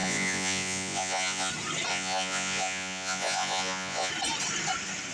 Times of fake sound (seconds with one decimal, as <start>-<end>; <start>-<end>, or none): 0.0-1.5; 1.9-4.1